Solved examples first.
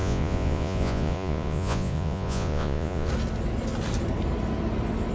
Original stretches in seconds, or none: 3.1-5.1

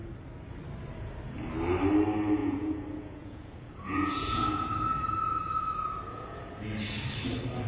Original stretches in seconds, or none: 0.0-2.4; 6.6-7.7

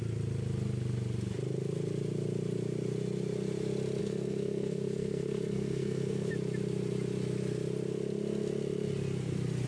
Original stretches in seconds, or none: 0.0-4.0; 6.3-9.7